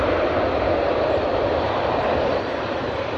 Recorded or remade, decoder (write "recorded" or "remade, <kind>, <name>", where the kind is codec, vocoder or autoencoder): remade, vocoder, BigVGAN v2